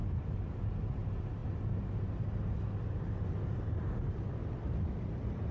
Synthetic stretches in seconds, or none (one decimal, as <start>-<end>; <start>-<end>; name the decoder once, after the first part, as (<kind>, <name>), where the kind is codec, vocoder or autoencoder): 0.0-0.6 (vocoder, BigVGAN v2)